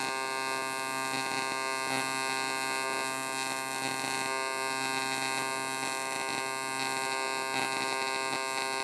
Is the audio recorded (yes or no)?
yes